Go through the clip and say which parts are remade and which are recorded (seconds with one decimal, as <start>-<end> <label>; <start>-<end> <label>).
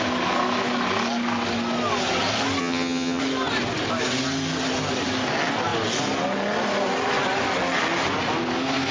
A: 0.0-2.6 recorded; 2.6-3.2 remade; 3.2-8.9 recorded